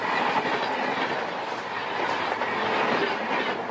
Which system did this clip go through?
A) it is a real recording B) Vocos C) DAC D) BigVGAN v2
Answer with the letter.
A